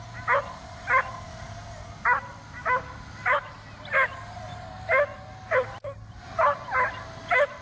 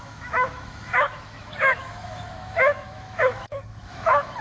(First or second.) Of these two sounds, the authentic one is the first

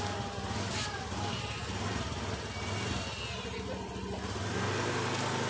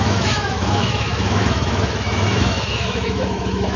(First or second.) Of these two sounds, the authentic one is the first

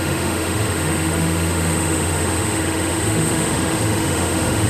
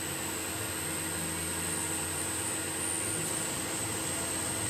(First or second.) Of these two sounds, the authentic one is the second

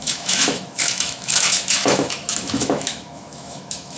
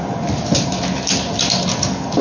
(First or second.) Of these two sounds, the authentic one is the second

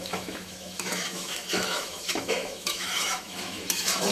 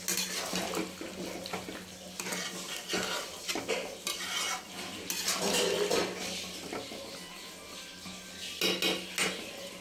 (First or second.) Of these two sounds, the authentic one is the second